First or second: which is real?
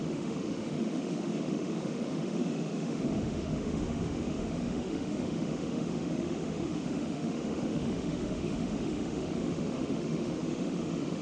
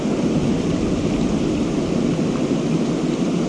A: second